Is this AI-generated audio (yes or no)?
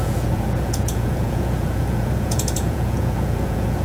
yes